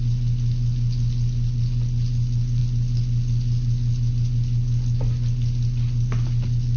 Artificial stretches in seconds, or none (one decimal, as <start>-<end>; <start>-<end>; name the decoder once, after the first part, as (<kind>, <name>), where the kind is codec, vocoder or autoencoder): none